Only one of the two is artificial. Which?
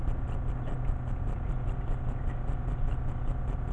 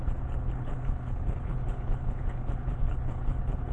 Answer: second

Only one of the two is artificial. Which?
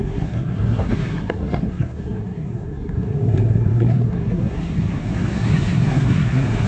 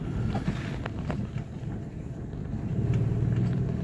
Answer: first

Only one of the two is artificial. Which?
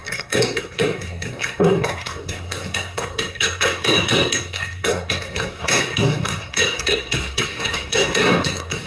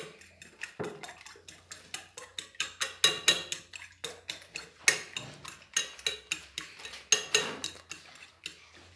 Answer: first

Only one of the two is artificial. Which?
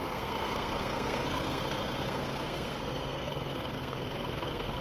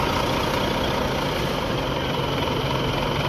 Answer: first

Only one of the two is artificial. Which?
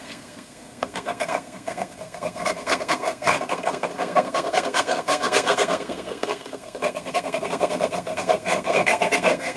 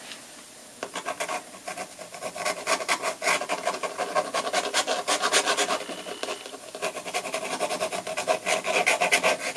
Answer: first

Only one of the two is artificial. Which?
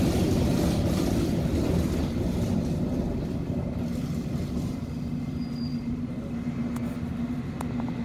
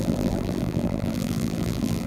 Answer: second